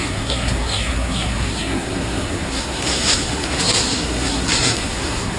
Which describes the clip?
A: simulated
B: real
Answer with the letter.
A